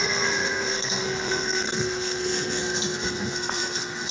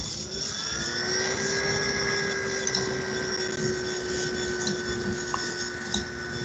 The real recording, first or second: second